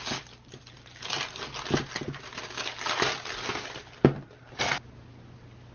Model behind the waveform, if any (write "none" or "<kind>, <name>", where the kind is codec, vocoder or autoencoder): none